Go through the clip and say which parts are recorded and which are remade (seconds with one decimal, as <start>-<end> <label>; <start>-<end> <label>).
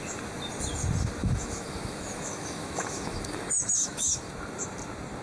0.0-1.2 recorded; 1.2-4.3 remade; 4.3-5.2 recorded